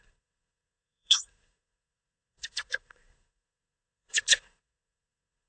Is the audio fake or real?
fake